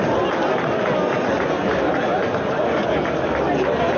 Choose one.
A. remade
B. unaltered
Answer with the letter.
B